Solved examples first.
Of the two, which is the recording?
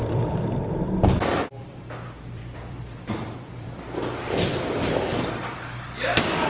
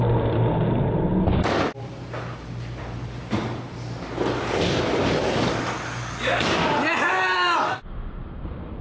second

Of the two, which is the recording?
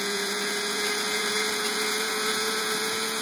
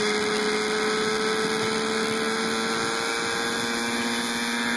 second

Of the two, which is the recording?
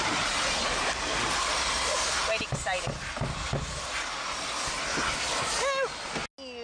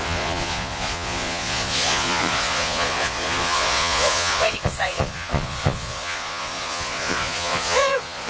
first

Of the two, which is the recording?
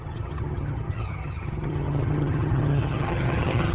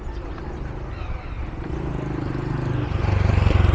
second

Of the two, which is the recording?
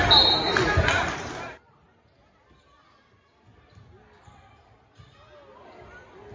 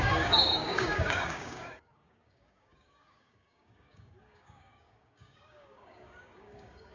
first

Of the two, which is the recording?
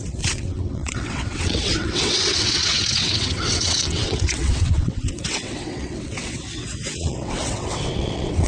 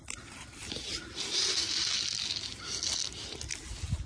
second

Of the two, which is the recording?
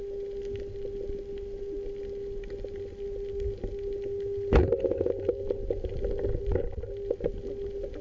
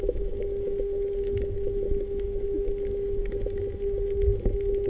first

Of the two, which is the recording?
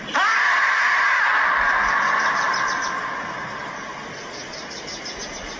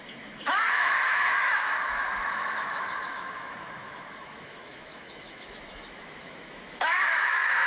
first